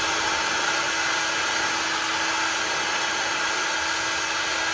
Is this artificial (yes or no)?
no